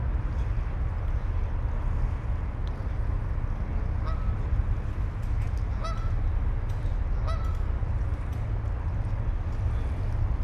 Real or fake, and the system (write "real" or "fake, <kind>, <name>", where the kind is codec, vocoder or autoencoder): real